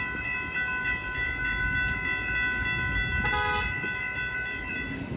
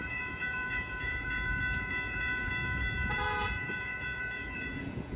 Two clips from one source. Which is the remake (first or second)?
second